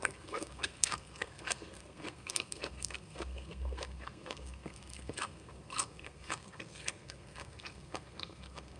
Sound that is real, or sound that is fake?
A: fake